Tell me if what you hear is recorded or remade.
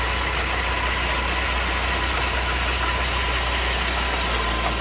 recorded